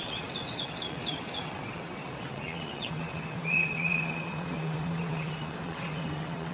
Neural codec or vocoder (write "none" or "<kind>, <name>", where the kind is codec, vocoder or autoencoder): vocoder, WaveNeXt